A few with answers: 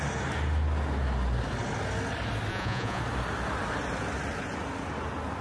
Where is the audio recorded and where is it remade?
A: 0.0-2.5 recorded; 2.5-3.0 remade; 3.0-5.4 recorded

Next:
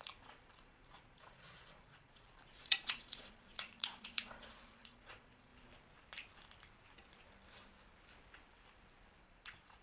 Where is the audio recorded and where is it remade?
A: 0.0-5.5 remade; 5.5-9.2 recorded; 9.2-9.8 remade

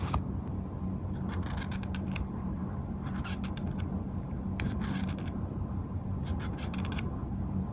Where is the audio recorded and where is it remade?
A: 0.0-7.7 recorded

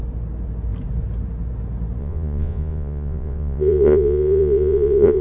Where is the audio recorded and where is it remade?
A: 0.0-2.0 recorded; 2.0-5.2 remade

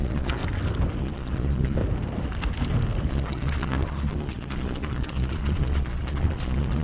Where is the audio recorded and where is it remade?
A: 0.0-0.4 remade; 0.4-1.0 recorded; 1.0-1.8 remade; 1.8-3.1 recorded; 3.1-6.8 remade

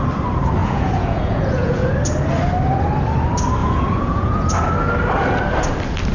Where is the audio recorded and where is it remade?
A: 0.0-0.6 recorded; 0.6-1.9 remade; 1.9-3.6 recorded; 3.6-4.5 remade; 4.5-6.1 recorded